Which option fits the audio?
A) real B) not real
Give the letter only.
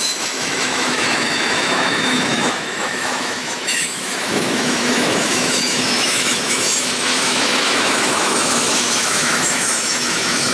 B